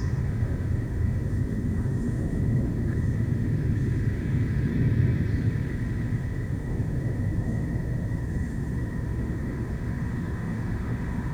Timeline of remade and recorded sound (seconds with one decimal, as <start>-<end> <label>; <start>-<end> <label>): 0.0-4.7 remade; 4.7-5.3 recorded; 5.3-11.3 remade